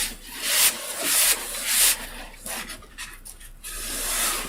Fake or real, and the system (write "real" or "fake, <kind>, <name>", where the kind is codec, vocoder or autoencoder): fake, vocoder, BigVGAN v2